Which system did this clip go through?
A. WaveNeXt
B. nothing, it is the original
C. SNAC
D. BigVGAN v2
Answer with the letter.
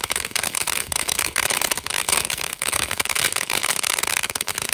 C